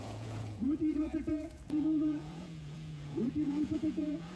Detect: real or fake fake